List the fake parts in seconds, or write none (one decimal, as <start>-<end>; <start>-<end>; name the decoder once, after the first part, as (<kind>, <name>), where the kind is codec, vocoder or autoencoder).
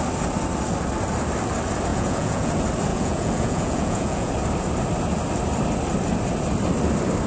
1.9-2.5 (vocoder, Vocos); 2.9-4.3